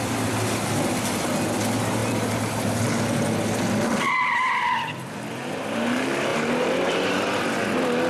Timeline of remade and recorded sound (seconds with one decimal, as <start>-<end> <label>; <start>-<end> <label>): 0.0-3.9 recorded; 3.9-4.6 remade; 4.6-6.3 recorded; 6.3-7.2 remade; 7.2-8.1 recorded